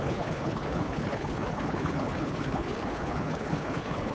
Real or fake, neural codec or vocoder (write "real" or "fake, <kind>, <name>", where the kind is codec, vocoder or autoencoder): fake, codec, HILCodec